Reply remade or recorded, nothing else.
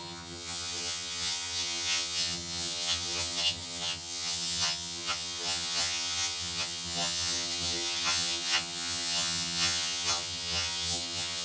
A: remade